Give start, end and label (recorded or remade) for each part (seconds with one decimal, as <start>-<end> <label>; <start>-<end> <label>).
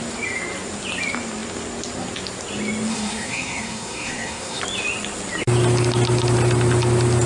0.0-2.9 recorded; 2.9-4.6 remade; 4.6-7.3 recorded